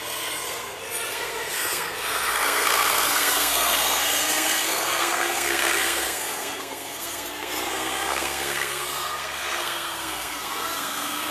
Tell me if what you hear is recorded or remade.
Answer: remade